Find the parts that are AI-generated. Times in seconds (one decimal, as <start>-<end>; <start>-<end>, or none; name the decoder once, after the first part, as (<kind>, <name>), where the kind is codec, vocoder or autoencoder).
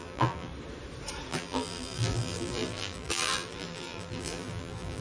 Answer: 0.0-0.5 (vocoder, BigVGAN v2); 1.3-5.0